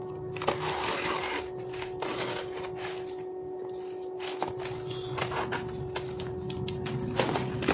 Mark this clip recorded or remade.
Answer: recorded